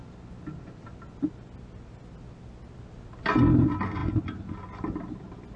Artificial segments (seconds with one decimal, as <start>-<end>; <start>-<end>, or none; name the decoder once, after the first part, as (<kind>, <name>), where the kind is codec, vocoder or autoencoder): none